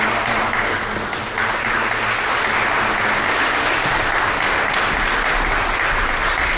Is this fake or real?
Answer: real